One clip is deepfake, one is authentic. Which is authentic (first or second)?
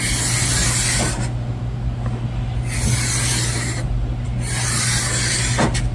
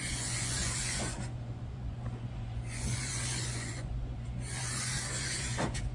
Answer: first